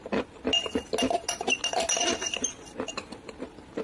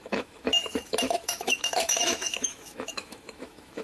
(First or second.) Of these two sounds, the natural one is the first